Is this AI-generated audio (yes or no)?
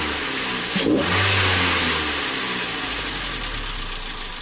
no